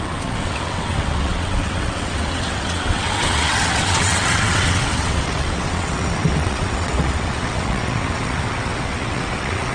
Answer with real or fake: fake